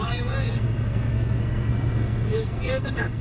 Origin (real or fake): fake